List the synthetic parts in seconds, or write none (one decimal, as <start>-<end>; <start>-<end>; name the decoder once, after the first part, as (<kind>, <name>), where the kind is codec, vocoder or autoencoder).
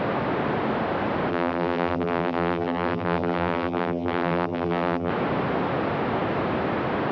1.3-5.1 (vocoder, BigVGAN v2)